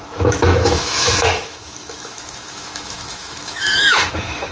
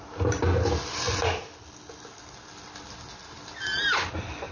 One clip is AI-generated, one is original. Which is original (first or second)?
second